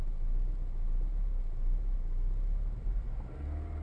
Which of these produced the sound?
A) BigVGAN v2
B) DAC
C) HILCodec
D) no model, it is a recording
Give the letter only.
D